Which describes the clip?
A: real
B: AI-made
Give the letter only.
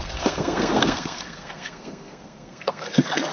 B